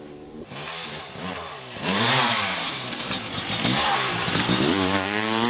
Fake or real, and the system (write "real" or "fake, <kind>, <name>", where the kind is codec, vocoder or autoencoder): fake, vocoder, BigVGAN v2